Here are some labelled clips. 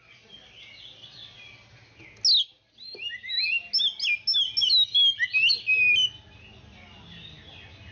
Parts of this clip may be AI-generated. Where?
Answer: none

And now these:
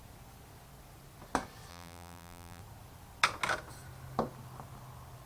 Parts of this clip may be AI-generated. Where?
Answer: 1.7-2.6 (vocoder, BigVGAN v2)

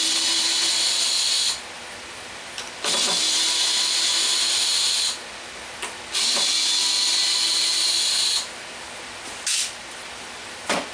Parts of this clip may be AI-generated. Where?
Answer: none

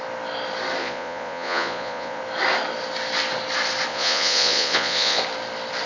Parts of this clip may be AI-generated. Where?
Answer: 0.8-2.2 (vocoder, Vocos); 3.9-5.2

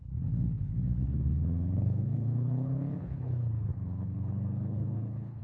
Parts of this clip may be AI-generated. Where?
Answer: 0.0-5.4 (codec, HILCodec)

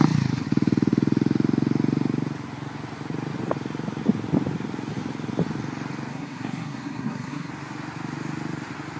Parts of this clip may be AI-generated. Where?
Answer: 6.1-7.5 (codec, SNAC)